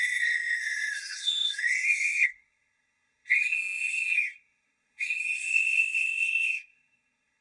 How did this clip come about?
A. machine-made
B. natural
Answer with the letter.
A